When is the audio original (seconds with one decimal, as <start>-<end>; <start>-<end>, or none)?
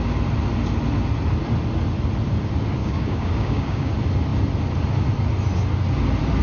0.0-2.8; 3.9-6.4